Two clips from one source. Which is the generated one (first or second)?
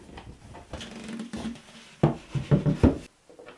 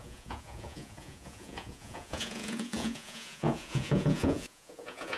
second